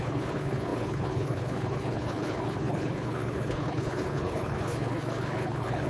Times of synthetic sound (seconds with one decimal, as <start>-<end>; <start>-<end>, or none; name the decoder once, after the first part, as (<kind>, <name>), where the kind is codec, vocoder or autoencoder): 0.0-5.9 (codec, HILCodec)